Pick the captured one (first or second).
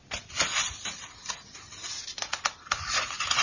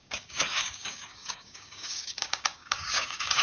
first